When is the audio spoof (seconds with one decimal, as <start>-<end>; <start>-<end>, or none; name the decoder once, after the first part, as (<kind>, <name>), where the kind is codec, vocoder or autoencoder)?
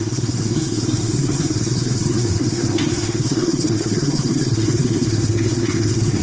0.0-6.2 (codec, SNAC)